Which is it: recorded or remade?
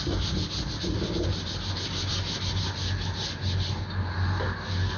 recorded